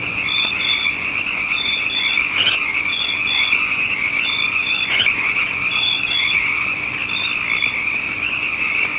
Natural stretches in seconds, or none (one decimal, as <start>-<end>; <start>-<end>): 7.0-7.8